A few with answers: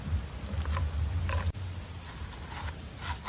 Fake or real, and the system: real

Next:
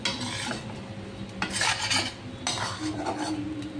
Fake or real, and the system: real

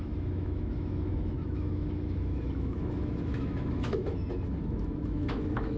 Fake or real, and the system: fake, autoencoder, DAC-VAE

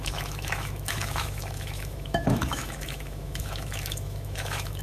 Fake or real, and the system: fake, autoencoder, DAC-VAE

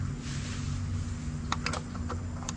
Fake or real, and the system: real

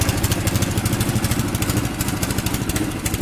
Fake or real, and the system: real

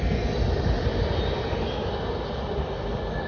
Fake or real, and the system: real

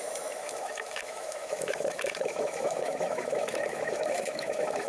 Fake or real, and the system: fake, autoencoder, DAC-VAE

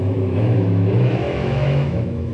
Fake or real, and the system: fake, autoencoder, DAC-VAE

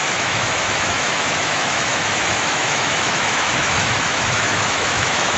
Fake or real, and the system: fake, autoencoder, DAC-VAE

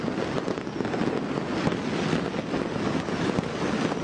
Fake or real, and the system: real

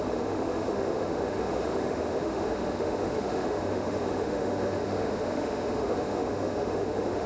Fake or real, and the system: fake, autoencoder, DAC-VAE